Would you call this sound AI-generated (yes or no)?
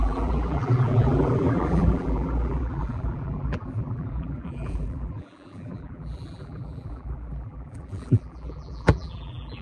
yes